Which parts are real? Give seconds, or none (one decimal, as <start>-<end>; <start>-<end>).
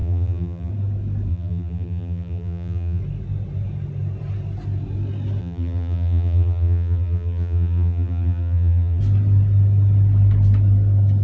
0.7-1.3; 3.0-5.4; 9.0-11.2